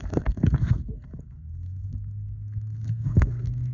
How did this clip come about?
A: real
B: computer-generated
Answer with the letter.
B